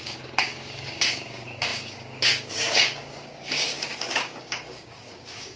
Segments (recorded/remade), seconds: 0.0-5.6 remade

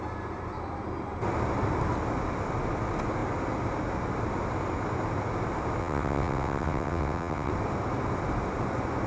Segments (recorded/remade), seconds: 0.0-5.8 recorded; 5.8-7.5 remade; 7.5-9.1 recorded

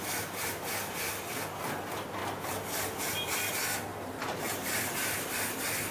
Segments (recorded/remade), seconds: 0.0-3.9 recorded; 3.9-5.3 remade; 5.3-5.9 recorded

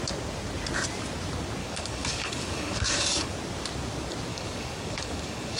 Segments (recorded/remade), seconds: 0.0-1.6 recorded; 1.6-3.3 remade; 3.3-4.3 recorded; 4.3-5.6 remade

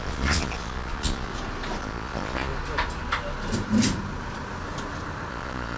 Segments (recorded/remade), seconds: 0.0-1.3 remade; 1.3-1.8 recorded; 1.8-2.5 remade; 2.5-5.3 recorded; 5.3-5.8 remade